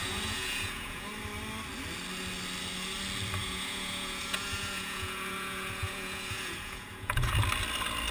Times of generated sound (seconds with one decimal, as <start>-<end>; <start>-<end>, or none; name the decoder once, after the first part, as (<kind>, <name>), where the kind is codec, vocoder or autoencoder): 0.0-1.1 (vocoder, Vocos); 3.4-7.3